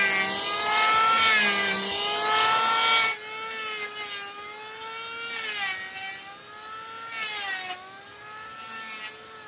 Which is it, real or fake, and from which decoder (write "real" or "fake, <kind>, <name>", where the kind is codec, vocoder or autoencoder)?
real